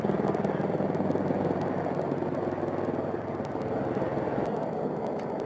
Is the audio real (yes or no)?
yes